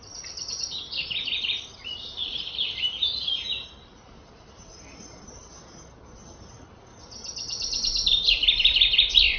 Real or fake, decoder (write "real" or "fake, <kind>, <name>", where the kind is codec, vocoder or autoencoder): real